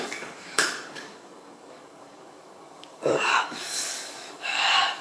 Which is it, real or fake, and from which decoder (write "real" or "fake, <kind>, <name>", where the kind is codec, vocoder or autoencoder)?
fake, codec, DAC